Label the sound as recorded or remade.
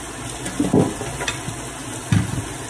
recorded